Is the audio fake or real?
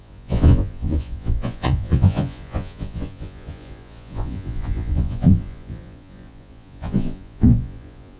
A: fake